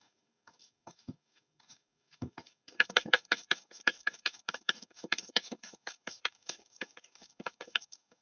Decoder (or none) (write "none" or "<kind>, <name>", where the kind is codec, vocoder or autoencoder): codec, DAC